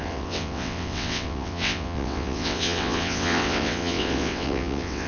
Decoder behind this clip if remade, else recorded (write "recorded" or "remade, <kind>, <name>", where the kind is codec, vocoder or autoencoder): remade, vocoder, WaveNeXt